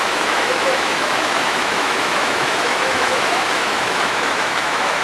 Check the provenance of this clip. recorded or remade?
remade